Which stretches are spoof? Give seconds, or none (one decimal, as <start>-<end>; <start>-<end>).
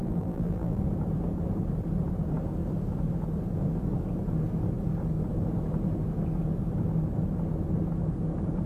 0.0-0.8